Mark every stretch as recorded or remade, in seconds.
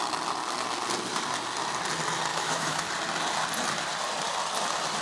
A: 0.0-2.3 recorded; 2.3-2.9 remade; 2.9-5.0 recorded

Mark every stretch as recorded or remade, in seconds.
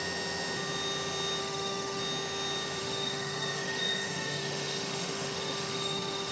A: 0.0-1.4 recorded; 1.4-2.0 remade; 2.0-2.8 recorded; 2.8-6.3 remade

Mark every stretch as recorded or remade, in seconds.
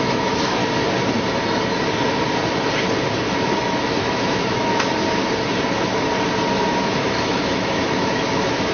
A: 0.0-0.6 remade; 0.6-3.3 recorded; 3.3-4.7 remade; 4.7-6.8 recorded; 6.8-8.7 remade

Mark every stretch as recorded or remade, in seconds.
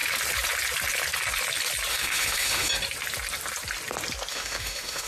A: 0.0-1.9 recorded; 1.9-2.7 remade; 2.7-4.3 recorded; 4.3-5.1 remade